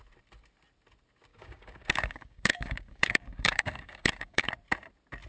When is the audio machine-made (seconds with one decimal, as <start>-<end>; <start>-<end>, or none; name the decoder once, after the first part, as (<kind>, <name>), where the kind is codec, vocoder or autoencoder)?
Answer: 1.3-4.5 (codec, DAC)